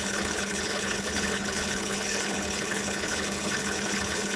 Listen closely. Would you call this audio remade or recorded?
remade